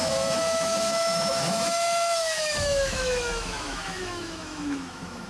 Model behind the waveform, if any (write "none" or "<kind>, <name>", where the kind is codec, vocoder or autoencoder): autoencoder, DAC-VAE